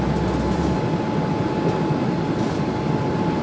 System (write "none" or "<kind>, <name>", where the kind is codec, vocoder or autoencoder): none